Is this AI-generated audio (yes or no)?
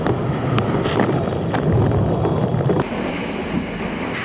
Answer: no